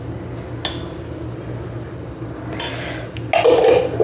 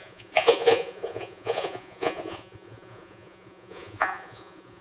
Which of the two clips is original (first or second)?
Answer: first